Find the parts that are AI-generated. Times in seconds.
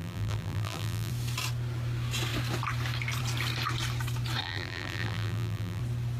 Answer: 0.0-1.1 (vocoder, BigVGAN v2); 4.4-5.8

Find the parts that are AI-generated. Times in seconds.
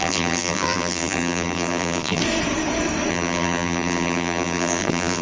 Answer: 0.0-2.2 (vocoder, BigVGAN v2); 3.1-5.2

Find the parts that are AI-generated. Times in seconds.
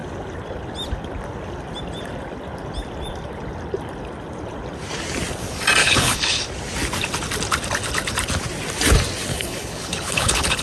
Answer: 5.8-6.4 (codec, HILCodec); 9.3-10.6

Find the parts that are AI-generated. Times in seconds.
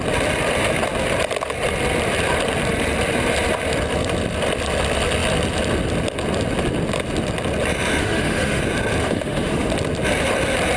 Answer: 8.0-8.6 (autoencoder, DAC-VAE); 9.0-9.7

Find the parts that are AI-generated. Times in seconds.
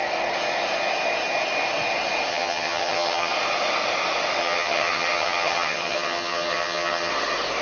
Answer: 2.3-3.3 (vocoder, HiFi-GAN); 4.4-7.1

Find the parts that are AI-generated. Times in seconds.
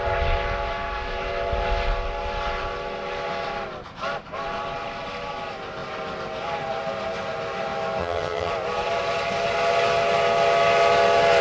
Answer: 8.0-8.5 (vocoder, HiFi-GAN)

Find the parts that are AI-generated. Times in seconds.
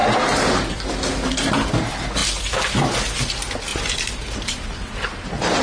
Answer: 3.7-5.6 (vocoder, BigVGAN v2)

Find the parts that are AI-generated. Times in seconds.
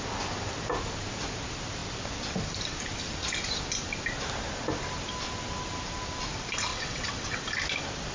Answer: 6.7-7.4 (vocoder, WaveNeXt)